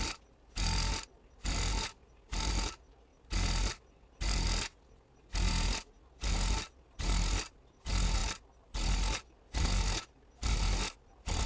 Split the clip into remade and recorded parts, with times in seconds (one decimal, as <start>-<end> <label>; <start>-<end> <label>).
0.0-11.5 recorded